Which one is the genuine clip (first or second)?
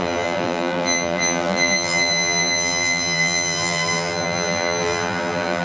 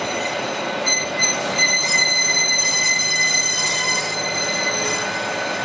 second